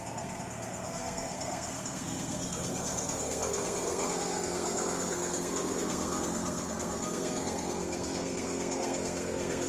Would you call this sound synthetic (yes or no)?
yes